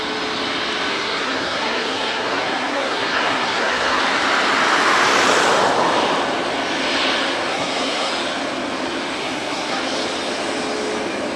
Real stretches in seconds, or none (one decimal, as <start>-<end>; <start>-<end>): 0.0-0.9; 4.0-7.5; 8.1-9.2; 9.8-11.4